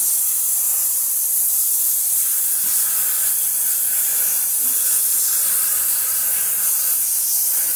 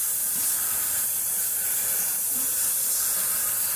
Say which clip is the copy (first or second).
second